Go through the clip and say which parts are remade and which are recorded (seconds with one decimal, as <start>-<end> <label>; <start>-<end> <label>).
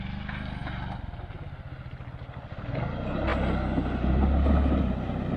0.0-5.4 recorded